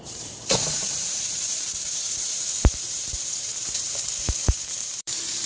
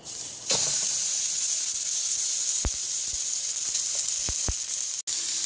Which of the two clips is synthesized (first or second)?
first